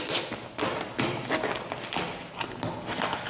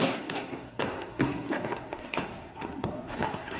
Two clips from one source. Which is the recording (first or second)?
first